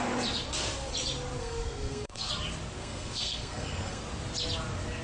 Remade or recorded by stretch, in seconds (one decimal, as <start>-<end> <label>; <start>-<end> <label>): 0.0-1.4 recorded; 1.4-2.3 remade; 2.3-2.8 recorded; 2.8-4.0 remade; 4.0-5.0 recorded